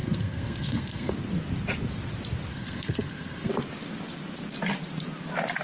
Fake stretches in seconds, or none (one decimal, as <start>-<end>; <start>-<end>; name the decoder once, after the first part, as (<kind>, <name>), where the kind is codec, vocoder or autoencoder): 0.0-1.1 (codec, SNAC); 2.5-3.5